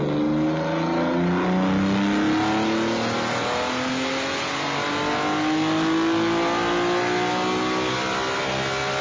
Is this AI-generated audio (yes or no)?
no